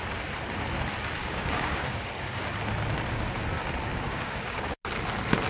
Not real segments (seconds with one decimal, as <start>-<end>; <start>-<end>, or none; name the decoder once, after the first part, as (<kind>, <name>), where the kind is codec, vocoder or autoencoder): 1.2-2.4 (codec, DAC); 3.9-4.8